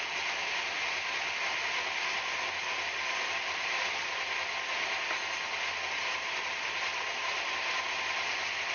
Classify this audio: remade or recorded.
recorded